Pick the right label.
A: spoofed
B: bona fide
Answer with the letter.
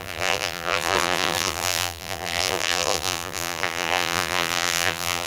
A